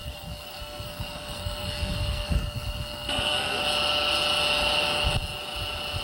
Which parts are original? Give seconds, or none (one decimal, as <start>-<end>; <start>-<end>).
3.6-6.0